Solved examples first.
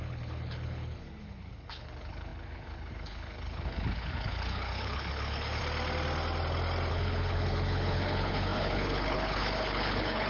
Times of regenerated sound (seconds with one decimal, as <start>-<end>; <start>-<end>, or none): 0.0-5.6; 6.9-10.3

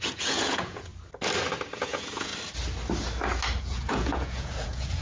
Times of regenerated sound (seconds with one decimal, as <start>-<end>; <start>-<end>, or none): 0.0-0.9; 1.7-2.3; 3.6-5.0

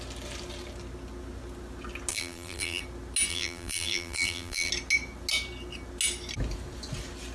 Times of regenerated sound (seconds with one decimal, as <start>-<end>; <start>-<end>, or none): 2.1-2.8; 3.3-4.7